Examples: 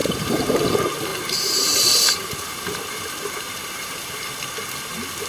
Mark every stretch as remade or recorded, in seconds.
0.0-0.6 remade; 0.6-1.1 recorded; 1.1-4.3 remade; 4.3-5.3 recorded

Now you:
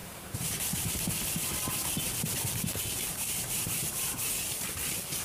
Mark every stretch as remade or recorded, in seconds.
0.0-0.9 remade; 0.9-2.7 recorded; 2.7-4.3 remade; 4.3-5.2 recorded

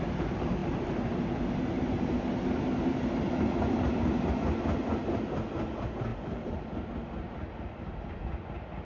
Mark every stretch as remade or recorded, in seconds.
0.0-6.1 recorded; 6.1-6.9 remade; 6.9-8.8 recorded

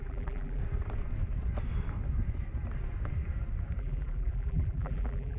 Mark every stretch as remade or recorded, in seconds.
0.0-0.6 remade; 0.6-3.8 recorded; 3.8-5.4 remade